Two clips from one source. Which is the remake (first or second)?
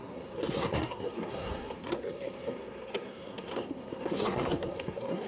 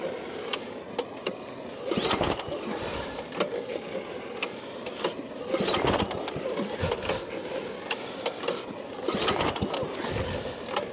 first